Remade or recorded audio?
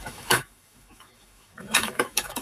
remade